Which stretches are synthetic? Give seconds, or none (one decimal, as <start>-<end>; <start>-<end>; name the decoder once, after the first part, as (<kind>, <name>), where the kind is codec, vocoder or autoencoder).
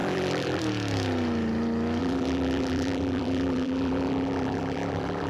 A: 0.0-0.6 (vocoder, BigVGAN v2); 2.0-5.3